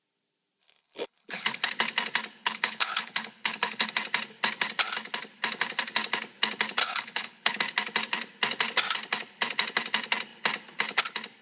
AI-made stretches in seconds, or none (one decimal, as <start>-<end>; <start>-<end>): 0.6-1.7; 2.4-3.9; 6.8-7.6